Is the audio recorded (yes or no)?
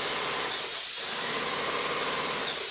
yes